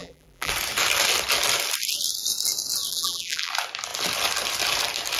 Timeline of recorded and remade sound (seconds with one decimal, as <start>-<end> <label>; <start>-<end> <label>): 0.0-0.5 remade; 0.5-2.9 recorded; 2.9-3.5 remade; 3.5-5.2 recorded

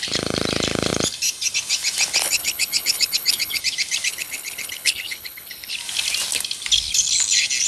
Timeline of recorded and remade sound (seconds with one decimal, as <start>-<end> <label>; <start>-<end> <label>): 0.0-2.2 recorded; 2.2-3.6 remade; 3.6-4.1 recorded; 4.1-5.7 remade; 5.7-7.7 recorded

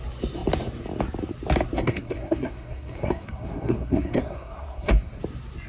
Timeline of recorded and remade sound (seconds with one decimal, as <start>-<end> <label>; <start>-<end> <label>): 0.0-1.8 recorded; 1.8-5.2 remade; 5.2-5.7 recorded